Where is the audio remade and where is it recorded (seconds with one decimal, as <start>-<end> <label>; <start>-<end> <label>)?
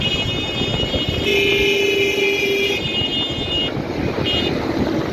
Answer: 0.0-5.1 recorded